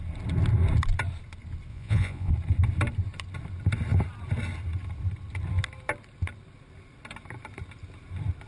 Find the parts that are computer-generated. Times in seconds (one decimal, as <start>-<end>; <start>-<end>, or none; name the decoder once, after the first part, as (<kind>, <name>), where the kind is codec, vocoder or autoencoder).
1.7-2.3 (vocoder, Vocos)